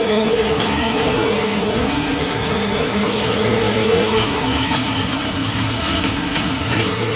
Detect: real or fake fake